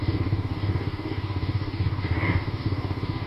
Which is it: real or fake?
fake